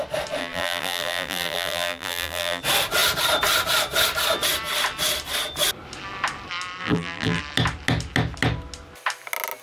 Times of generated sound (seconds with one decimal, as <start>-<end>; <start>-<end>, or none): 0.4-2.6; 6.8-7.4